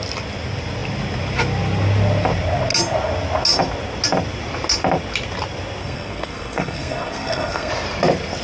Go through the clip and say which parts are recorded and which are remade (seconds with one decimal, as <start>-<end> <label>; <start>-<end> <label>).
0.0-5.8 recorded; 5.8-7.7 remade; 7.7-8.4 recorded